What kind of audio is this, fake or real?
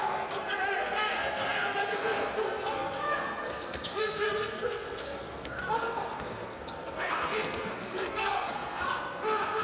fake